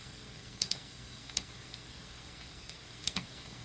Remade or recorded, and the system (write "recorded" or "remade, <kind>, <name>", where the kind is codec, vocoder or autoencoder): remade, codec, SNAC